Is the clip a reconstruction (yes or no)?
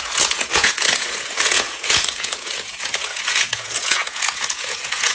yes